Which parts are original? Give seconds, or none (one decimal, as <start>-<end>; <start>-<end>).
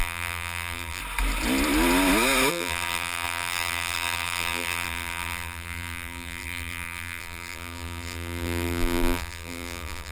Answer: 1.0-2.5